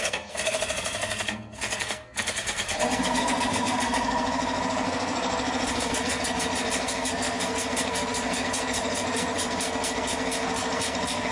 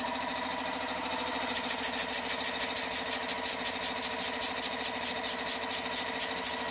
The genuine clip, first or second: second